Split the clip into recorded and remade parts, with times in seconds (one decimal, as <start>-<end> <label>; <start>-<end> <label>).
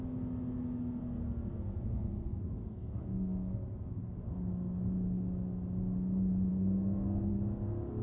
0.0-1.0 recorded; 1.0-4.5 remade; 4.5-6.5 recorded; 6.5-7.3 remade; 7.3-8.0 recorded